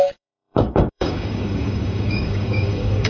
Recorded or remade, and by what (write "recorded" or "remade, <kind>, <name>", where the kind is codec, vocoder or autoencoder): remade, codec, DAC